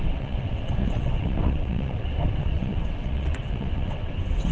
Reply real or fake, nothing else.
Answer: fake